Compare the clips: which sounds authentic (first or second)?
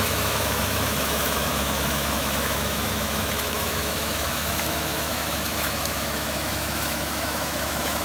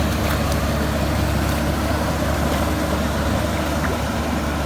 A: second